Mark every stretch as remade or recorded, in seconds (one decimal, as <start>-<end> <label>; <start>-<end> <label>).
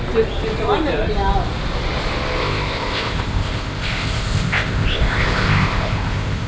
0.0-2.4 recorded; 2.4-6.5 remade